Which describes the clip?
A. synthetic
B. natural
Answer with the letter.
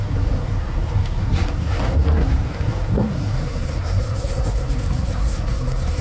A